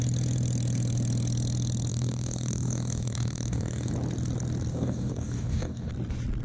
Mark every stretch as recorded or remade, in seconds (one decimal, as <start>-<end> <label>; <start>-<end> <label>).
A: 0.0-1.9 recorded; 1.9-3.9 remade; 3.9-4.7 recorded; 4.7-5.9 remade; 5.9-6.4 recorded